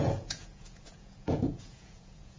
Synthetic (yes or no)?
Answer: yes